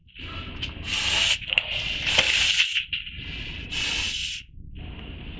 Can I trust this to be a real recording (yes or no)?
yes